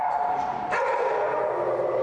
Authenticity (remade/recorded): recorded